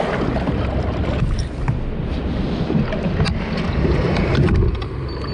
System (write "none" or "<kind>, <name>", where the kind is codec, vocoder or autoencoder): none